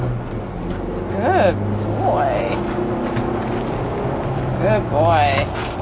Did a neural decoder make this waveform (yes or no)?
no